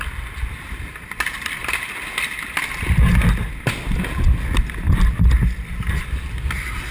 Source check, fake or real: real